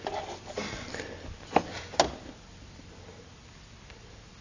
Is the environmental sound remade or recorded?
recorded